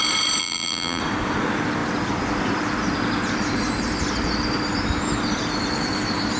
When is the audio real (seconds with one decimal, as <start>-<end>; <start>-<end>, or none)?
0.0-0.4; 1.0-6.4